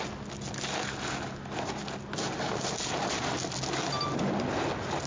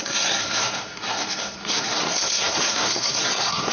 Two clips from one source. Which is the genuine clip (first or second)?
first